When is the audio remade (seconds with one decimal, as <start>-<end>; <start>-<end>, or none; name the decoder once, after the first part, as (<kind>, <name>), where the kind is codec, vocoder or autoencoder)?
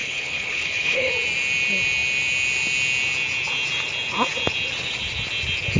0.0-1.1 (codec, HILCodec)